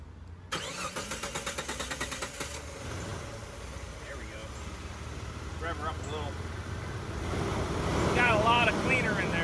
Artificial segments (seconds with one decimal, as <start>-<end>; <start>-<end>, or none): 7.5-8.7